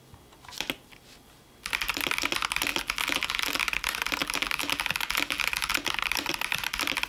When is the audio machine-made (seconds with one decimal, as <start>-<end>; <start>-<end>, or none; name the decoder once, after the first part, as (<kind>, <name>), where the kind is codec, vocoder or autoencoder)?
2.7-3.6 (vocoder, BigVGAN v2); 4.2-5.7

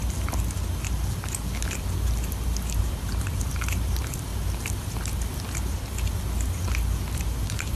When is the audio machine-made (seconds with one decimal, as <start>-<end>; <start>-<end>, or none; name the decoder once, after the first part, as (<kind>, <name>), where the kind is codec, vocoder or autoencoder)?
2.8-4.3 (vocoder, BigVGAN v2); 7.1-7.8

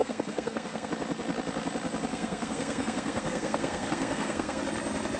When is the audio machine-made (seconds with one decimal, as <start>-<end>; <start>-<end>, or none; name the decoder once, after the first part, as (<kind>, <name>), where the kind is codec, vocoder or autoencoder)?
0.0-0.9 (codec, SNAC); 2.1-4.6

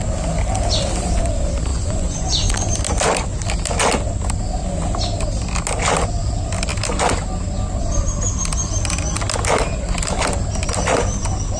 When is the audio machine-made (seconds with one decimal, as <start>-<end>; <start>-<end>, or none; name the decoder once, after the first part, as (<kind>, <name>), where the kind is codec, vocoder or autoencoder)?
1.7-2.7 (vocoder, Vocos)

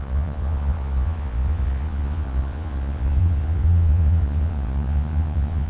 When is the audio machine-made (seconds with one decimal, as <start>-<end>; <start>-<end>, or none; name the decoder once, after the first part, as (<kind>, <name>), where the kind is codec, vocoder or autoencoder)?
0.0-5.7 (vocoder, Vocos)